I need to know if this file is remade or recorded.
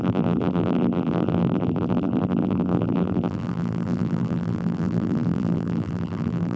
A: remade